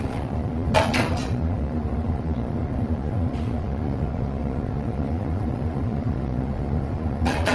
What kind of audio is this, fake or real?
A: fake